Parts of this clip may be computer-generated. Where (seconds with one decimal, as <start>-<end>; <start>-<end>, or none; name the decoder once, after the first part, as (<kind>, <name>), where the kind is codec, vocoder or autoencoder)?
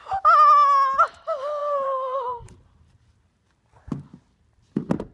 1.6-3.5 (vocoder, BigVGAN v2)